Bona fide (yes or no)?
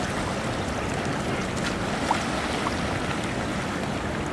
yes